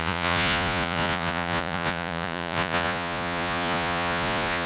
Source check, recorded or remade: remade